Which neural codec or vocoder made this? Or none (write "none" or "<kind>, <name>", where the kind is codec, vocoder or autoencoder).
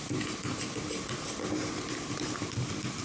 none